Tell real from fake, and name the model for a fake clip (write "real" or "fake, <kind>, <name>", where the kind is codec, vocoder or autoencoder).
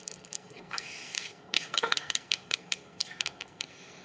fake, codec, SNAC